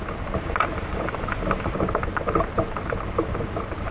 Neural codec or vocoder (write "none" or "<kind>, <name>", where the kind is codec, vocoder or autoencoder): none